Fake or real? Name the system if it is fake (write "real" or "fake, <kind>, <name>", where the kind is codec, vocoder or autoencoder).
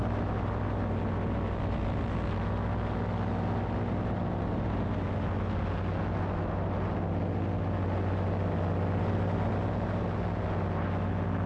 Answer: real